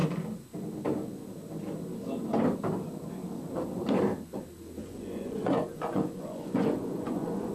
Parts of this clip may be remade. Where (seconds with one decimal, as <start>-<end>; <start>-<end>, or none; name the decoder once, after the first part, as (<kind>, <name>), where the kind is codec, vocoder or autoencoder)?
4.8-7.5 (vocoder, Vocos)